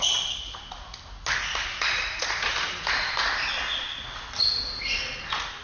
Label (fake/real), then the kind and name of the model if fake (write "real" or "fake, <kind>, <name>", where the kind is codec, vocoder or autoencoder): real